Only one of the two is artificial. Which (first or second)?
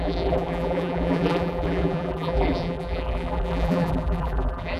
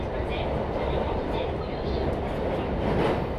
first